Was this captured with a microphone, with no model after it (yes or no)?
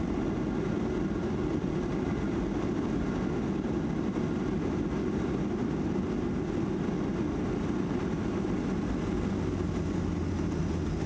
yes